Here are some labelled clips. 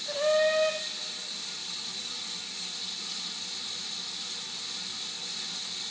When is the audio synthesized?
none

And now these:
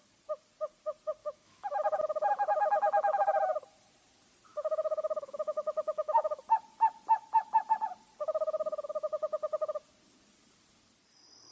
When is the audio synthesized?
1.2-2.3; 4.5-6.4

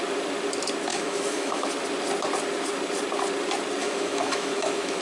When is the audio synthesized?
0.9-1.7; 3.8-5.0

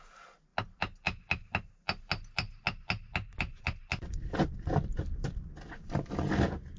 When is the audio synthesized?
none

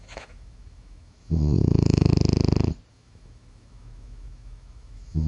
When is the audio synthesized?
0.0-2.1; 2.9-5.3